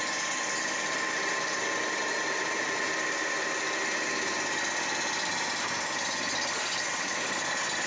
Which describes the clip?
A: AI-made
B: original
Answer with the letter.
B